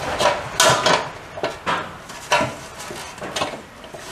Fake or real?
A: real